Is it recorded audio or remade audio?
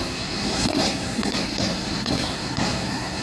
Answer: remade